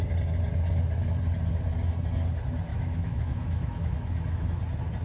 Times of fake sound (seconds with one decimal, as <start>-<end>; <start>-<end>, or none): 2.7-4.6